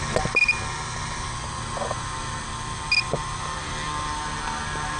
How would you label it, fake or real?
real